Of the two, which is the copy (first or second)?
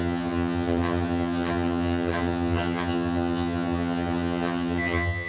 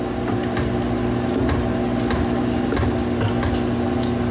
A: first